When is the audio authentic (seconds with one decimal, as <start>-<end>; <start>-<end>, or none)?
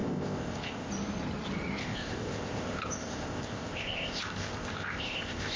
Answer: 0.9-1.8